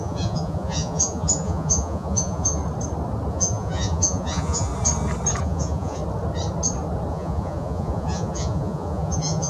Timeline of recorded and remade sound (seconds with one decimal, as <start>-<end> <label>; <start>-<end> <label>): 0.0-2.6 remade; 2.6-3.3 recorded; 3.3-4.7 remade; 4.7-5.4 recorded; 5.4-6.0 remade; 6.0-7.1 recorded; 7.1-9.5 remade